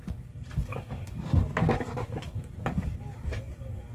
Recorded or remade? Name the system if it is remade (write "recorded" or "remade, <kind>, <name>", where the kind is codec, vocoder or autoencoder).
remade, codec, DAC